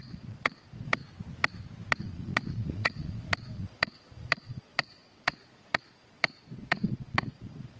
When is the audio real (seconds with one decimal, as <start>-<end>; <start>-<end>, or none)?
1.0-2.0